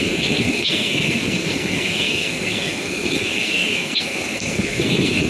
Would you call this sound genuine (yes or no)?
no